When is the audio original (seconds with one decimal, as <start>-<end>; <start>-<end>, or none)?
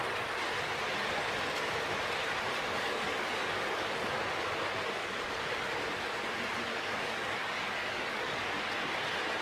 0.0-2.7; 4.2-5.0; 5.7-6.7; 8.4-9.4